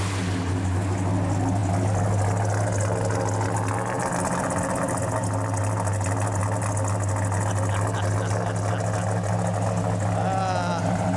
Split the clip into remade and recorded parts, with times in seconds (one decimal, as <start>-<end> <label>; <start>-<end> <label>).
0.0-11.2 recorded